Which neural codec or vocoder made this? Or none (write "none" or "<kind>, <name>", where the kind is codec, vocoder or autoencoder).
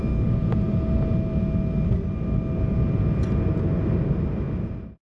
none